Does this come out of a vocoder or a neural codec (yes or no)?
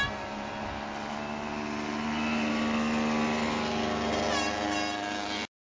no